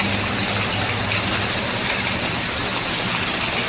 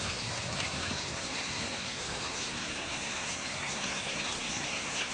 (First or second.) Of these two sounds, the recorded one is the first